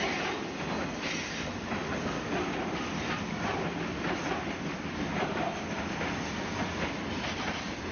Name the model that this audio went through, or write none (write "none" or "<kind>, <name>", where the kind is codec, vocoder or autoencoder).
none